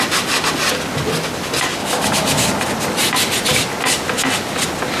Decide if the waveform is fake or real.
real